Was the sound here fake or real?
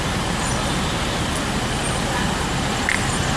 real